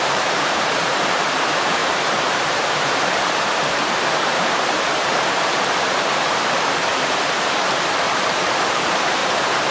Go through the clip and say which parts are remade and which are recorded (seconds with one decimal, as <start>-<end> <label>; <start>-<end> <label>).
0.0-6.9 remade; 6.9-8.1 recorded; 8.1-9.2 remade; 9.2-9.7 recorded